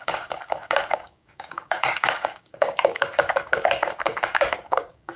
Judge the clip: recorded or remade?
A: remade